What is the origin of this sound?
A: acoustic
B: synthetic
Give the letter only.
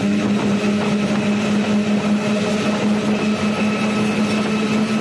A